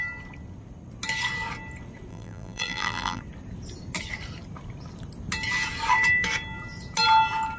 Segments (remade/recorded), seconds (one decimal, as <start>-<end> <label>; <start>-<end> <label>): 0.0-2.1 recorded; 2.1-3.2 remade; 3.2-7.6 recorded